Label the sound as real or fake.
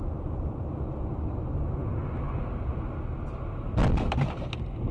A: real